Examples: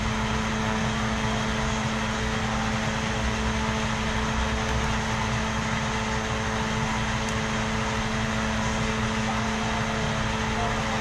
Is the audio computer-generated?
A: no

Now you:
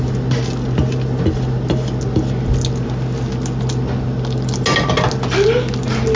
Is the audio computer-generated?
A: no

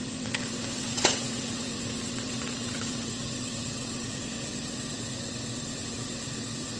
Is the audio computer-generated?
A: yes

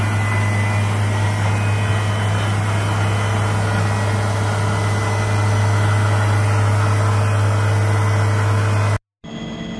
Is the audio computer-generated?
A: no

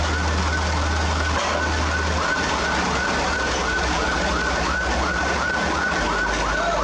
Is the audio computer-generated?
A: no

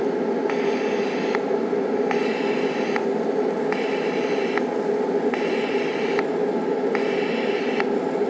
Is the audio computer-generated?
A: no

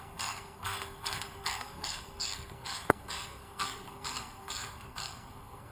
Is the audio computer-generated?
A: yes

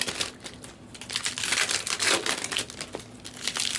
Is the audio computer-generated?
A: no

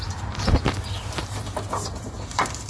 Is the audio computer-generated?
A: yes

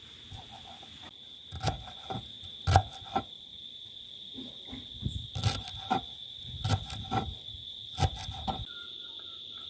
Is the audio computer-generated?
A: no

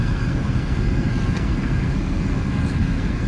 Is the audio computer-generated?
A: yes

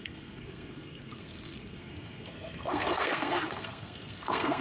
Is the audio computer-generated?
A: yes